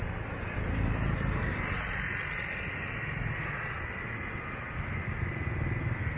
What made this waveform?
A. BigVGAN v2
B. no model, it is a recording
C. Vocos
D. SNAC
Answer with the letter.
B